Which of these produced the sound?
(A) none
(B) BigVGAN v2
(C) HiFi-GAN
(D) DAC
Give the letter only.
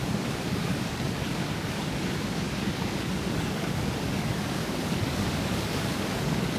D